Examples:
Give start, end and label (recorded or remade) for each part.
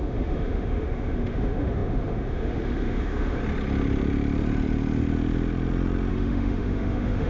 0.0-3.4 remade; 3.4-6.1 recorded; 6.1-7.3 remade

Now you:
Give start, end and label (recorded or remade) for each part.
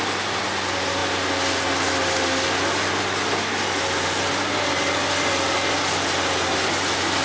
0.0-7.2 recorded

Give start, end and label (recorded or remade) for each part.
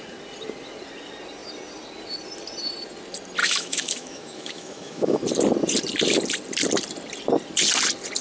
0.0-3.4 recorded; 3.4-5.2 remade; 5.2-8.2 recorded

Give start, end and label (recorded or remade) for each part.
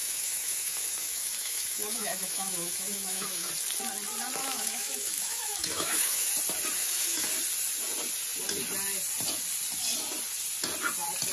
0.0-3.5 remade; 3.5-4.4 recorded; 4.4-6.3 remade; 6.3-6.8 recorded; 6.8-7.3 remade; 7.3-11.3 recorded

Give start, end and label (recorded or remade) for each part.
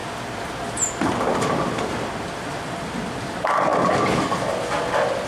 0.0-5.3 recorded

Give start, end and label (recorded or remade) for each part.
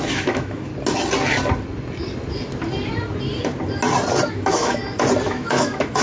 0.0-0.7 remade; 0.7-4.3 recorded; 4.3-4.8 remade; 4.8-5.3 recorded; 5.3-6.0 remade